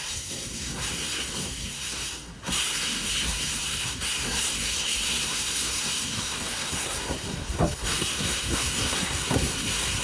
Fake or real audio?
fake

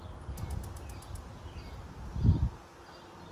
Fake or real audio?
real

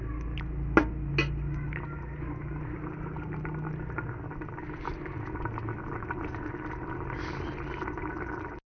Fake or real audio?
real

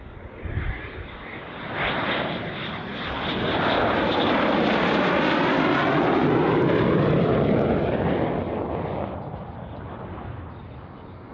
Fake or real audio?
real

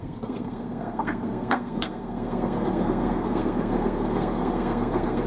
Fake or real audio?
fake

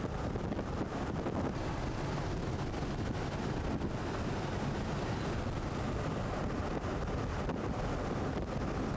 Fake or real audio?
real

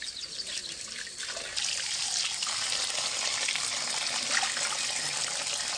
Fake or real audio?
real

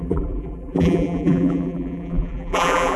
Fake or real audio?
fake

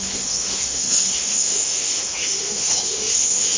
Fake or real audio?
fake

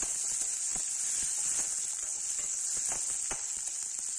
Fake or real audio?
real